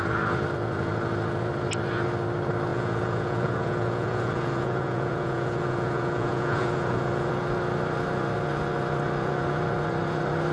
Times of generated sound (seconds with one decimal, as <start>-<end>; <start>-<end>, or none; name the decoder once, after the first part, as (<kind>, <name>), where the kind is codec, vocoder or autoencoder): 2.7-7.3 (vocoder, Vocos)